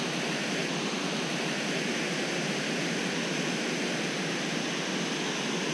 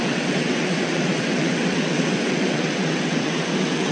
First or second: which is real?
first